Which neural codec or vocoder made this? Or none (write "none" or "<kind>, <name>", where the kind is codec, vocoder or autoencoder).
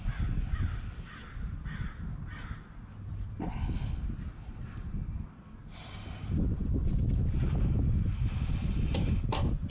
none